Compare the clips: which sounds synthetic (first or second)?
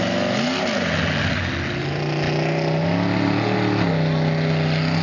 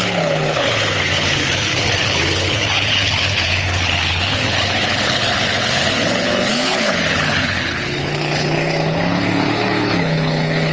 second